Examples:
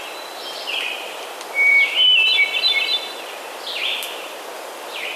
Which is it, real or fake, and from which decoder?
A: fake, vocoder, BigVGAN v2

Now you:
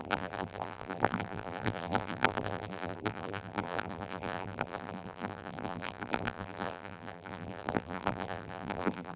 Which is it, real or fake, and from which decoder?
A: fake, vocoder, BigVGAN v2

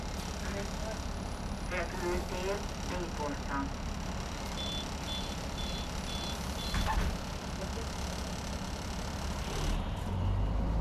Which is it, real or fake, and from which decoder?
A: real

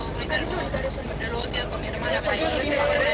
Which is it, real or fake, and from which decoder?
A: fake, vocoder, BigVGAN v2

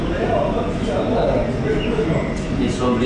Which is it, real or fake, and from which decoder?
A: real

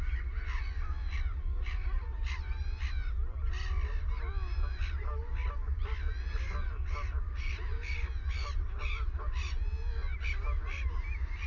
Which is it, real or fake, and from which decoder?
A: real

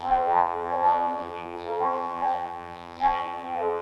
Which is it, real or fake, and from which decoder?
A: fake, vocoder, BigVGAN v2